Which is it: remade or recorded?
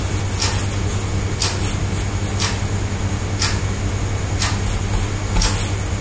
recorded